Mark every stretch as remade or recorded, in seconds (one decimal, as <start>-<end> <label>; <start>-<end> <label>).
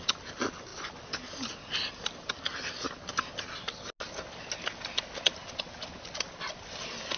0.0-7.2 recorded